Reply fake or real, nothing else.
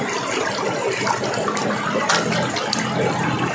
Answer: real